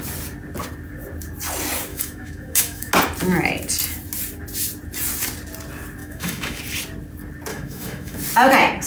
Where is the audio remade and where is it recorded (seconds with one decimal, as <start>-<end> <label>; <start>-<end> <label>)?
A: 0.0-1.9 recorded; 1.9-2.9 remade; 2.9-6.0 recorded; 6.0-6.6 remade; 6.6-7.5 recorded; 7.5-8.2 remade; 8.2-8.9 recorded